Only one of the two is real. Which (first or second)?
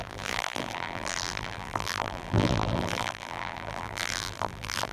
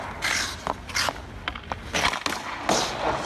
second